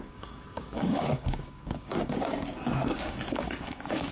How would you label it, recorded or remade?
remade